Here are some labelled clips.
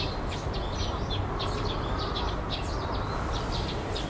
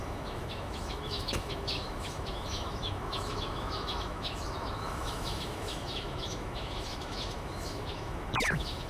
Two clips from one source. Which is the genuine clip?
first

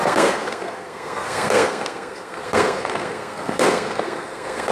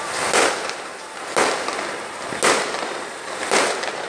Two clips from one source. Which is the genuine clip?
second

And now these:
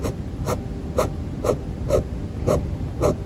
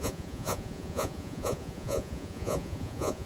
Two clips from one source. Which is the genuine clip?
first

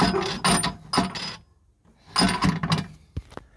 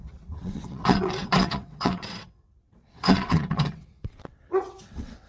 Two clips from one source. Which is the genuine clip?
first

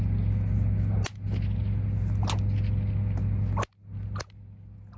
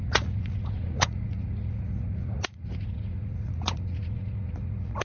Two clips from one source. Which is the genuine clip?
first